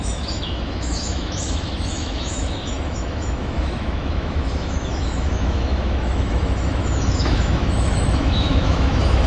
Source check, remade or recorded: remade